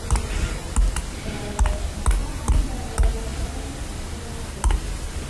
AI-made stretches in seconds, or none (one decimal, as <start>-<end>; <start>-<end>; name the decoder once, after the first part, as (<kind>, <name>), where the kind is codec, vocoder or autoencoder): 2.2-2.8 (vocoder, BigVGAN v2); 3.3-5.3

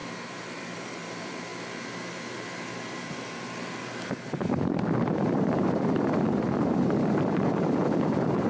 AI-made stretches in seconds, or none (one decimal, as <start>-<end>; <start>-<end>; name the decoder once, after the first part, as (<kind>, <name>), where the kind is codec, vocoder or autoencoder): 0.0-8.5 (vocoder, BigVGAN v2)

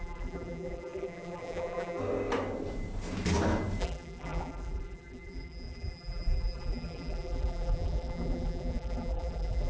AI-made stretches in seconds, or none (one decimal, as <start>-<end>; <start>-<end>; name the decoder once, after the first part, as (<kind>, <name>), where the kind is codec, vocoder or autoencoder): 0.0-2.0 (vocoder, BigVGAN v2); 3.8-9.7

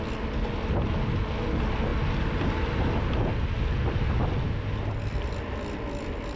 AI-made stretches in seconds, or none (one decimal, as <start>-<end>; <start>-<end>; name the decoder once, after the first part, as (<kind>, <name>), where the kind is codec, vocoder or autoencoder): 1.9-4.0 (vocoder, BigVGAN v2)